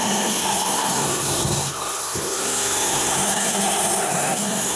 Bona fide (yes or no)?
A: no